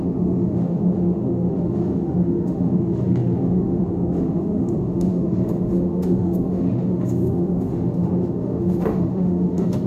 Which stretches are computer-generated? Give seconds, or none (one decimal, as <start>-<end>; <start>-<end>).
0.0-9.9